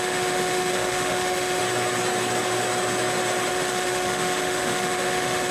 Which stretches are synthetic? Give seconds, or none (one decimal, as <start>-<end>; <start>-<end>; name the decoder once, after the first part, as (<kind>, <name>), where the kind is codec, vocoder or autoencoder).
0.0-1.6 (autoencoder, DAC-VAE); 3.5-5.5